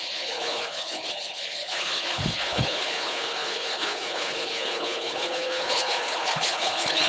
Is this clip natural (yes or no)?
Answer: no